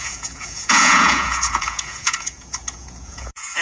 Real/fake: fake